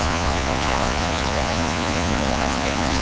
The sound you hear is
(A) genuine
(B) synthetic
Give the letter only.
B